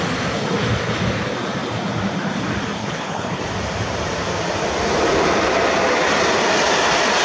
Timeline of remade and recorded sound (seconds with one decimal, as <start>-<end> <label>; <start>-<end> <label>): 0.0-2.8 recorded; 2.8-3.4 remade; 3.4-7.2 recorded

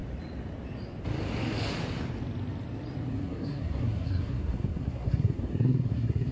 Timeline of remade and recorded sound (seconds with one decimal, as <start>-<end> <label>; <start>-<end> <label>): 0.0-3.1 recorded; 3.1-6.3 remade